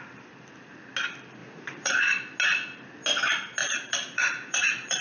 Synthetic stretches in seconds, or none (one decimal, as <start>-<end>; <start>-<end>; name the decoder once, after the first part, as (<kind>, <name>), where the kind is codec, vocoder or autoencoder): 1.4-2.0 (vocoder, Vocos); 3.6-5.0